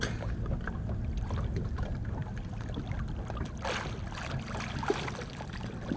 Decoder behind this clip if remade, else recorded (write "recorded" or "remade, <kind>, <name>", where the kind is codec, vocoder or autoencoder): recorded